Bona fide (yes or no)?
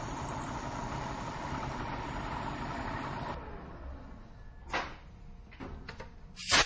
yes